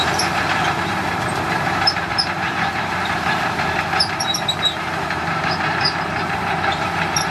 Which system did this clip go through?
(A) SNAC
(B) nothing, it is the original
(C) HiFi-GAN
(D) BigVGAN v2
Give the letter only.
D